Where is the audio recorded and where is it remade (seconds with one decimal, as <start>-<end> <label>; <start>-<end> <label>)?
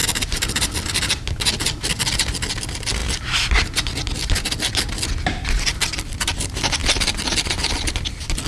0.0-8.5 recorded